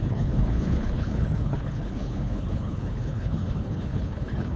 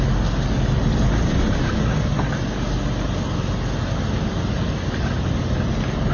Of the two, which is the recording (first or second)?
second